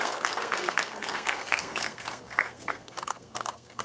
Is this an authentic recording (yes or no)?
no